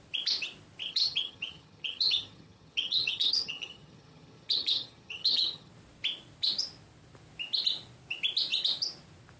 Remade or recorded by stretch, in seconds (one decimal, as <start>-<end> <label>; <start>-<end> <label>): 0.0-0.8 recorded; 0.8-5.7 remade; 5.7-9.4 recorded